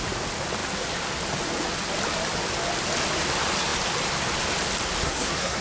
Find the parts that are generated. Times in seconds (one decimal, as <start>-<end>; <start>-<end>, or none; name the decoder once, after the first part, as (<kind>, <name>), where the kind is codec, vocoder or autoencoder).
5.0-5.6 (codec, SNAC)